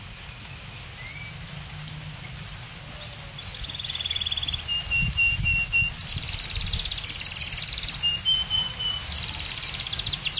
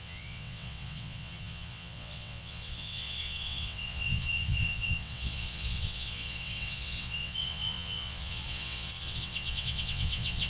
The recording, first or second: first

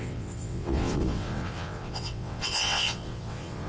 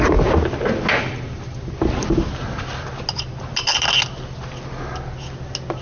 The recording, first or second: second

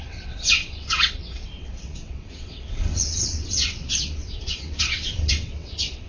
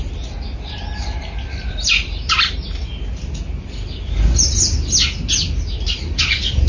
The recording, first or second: second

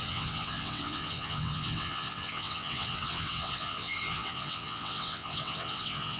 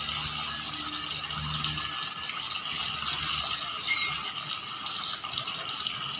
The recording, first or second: second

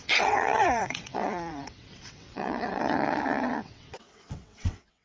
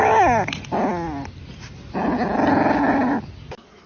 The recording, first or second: second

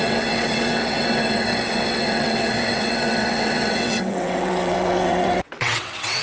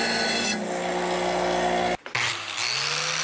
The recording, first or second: second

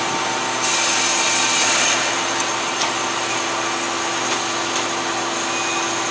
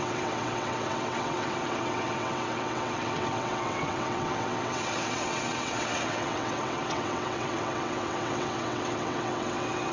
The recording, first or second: first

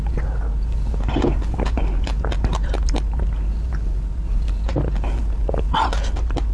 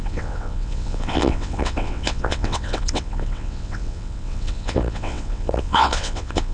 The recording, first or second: first